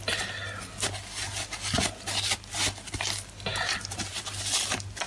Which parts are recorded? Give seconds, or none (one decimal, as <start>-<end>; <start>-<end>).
0.0-5.1